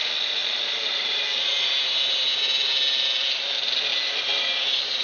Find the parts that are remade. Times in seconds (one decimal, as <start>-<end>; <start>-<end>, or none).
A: 0.4-1.7; 3.9-4.5